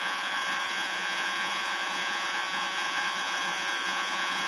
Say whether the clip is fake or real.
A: fake